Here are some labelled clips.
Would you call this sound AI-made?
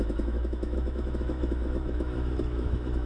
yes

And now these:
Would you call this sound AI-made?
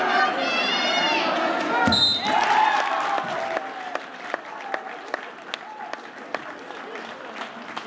no